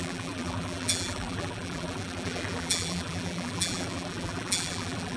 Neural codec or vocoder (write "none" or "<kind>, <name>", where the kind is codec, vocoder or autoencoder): vocoder, BigVGAN v2